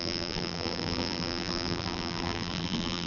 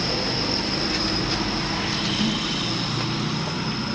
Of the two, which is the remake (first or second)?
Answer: first